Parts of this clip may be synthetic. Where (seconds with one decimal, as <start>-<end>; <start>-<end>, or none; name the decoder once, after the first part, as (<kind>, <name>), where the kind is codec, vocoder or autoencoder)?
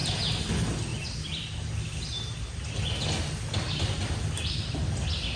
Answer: 0.9-1.4 (vocoder, BigVGAN v2)